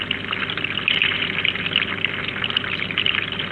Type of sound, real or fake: real